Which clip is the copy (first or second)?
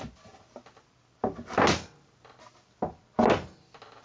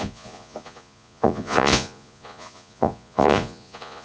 second